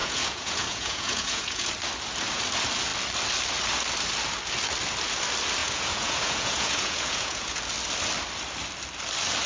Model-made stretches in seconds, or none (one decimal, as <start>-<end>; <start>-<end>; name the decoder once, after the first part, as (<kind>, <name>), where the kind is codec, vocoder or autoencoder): 0.0-1.7 (vocoder, Vocos); 5.6-7.6